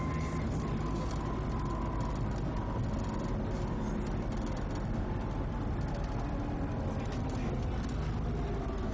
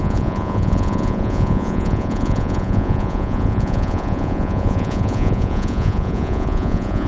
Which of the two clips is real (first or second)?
first